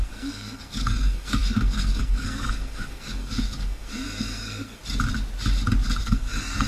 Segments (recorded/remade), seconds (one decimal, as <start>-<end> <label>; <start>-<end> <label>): 0.0-4.8 remade; 4.8-6.0 recorded; 6.0-6.7 remade